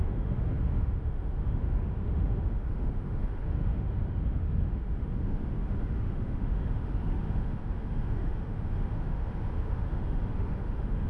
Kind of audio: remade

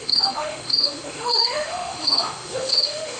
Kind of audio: remade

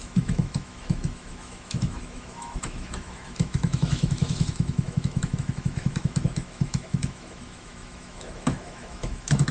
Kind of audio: remade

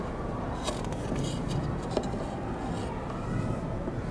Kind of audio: recorded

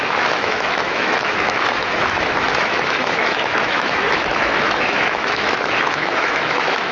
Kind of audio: remade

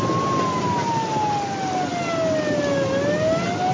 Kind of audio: recorded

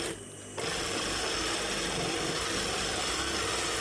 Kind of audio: recorded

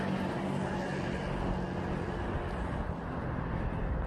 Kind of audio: recorded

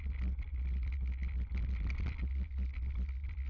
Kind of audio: recorded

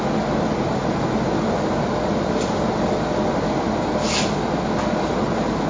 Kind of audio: recorded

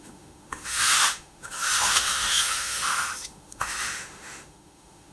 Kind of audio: remade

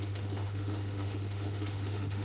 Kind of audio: remade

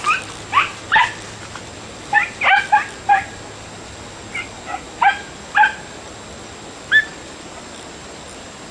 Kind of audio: recorded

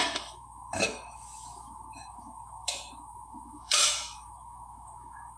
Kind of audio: remade